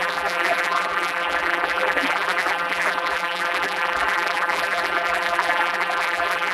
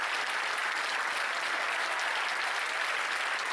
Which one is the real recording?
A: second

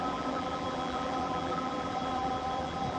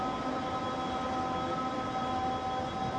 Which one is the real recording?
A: second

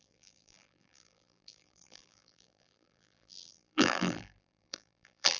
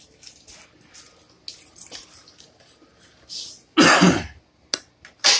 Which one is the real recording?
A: second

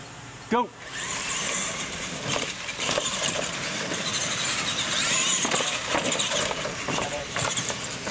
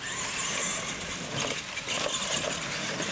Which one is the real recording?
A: second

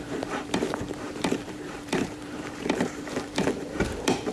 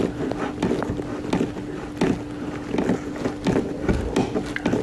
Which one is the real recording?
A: second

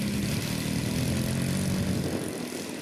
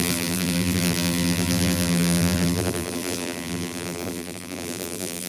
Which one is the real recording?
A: first